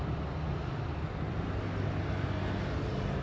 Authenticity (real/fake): real